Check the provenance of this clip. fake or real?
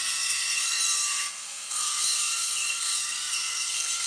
fake